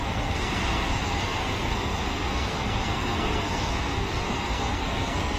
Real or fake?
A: fake